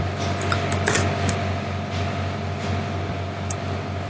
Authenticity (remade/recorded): recorded